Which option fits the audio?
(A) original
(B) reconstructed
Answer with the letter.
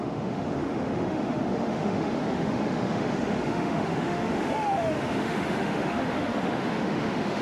B